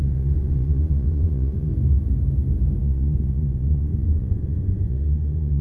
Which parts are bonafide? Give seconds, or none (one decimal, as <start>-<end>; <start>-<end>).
1.7-2.8